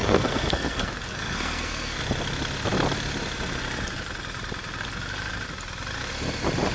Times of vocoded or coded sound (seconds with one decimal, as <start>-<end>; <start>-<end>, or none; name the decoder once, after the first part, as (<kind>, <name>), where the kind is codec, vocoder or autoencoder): 0.0-2.0 (codec, SNAC)